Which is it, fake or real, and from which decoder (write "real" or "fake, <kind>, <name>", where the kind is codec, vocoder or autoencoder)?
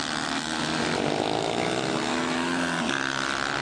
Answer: real